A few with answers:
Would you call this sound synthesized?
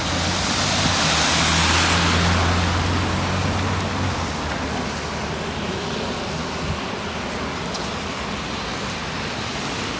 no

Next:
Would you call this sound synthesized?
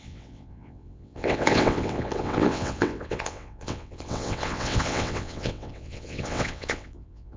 yes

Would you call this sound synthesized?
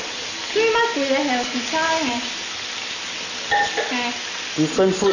no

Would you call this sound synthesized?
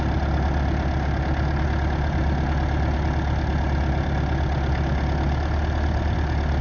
no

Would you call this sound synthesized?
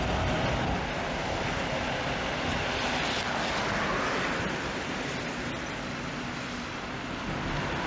no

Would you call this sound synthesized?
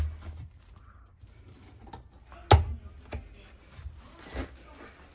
no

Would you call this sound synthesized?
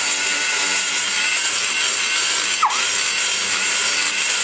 no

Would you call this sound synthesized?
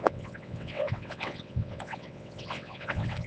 yes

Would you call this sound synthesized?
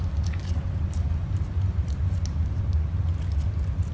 no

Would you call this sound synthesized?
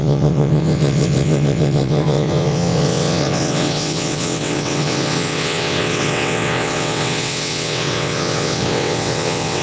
yes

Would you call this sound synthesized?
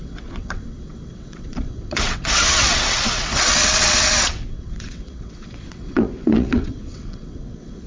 yes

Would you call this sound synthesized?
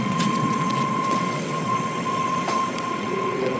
yes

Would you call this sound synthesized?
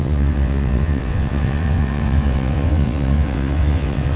yes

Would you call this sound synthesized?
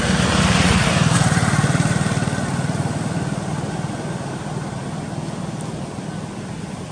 no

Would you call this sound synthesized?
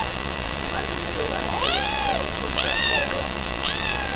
yes